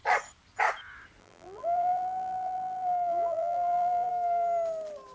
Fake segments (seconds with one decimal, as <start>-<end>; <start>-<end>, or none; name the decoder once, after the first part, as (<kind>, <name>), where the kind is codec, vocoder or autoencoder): 1.2-4.1 (vocoder, BigVGAN v2)